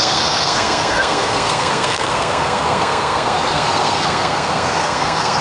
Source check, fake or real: fake